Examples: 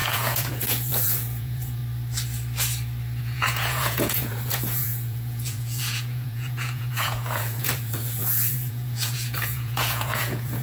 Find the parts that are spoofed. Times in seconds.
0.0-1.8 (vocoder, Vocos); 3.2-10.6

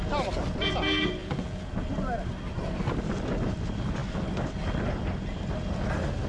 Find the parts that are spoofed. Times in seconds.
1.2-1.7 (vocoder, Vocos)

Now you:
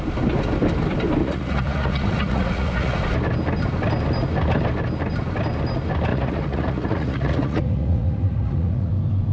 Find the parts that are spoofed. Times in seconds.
1.2-3.0 (vocoder, Vocos); 6.1-8.9